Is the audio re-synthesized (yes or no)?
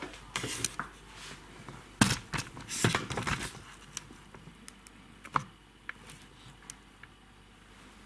no